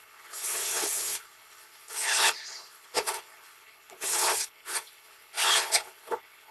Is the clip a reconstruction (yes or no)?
yes